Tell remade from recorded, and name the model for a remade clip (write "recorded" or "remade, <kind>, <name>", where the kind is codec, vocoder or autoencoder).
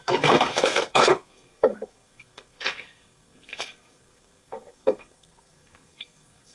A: remade, codec, SNAC